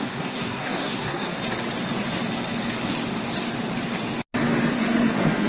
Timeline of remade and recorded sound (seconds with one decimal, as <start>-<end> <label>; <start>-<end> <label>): 0.0-1.4 remade; 1.4-4.7 recorded; 4.7-5.5 remade